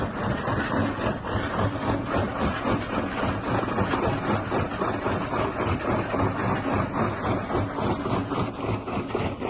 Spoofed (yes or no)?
no